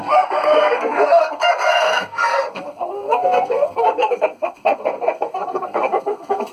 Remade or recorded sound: remade